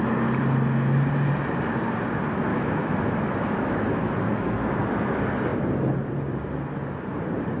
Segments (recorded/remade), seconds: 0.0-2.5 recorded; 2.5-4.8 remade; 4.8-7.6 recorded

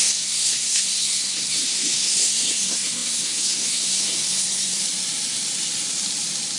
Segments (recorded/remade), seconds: 0.0-4.8 remade; 4.8-6.6 recorded

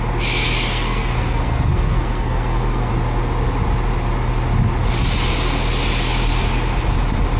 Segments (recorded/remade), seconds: 0.0-0.7 recorded; 0.7-2.9 remade; 2.9-7.4 recorded

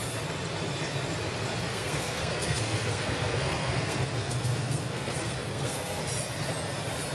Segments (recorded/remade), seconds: 0.0-1.7 recorded; 1.7-6.0 remade; 6.0-7.1 recorded